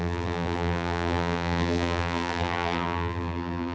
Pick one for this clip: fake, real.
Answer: fake